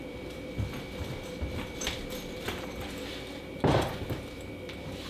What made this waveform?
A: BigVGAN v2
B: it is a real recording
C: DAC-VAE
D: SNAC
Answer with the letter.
A